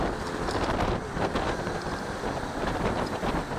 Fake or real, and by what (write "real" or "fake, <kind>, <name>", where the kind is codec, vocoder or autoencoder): fake, vocoder, BigVGAN v2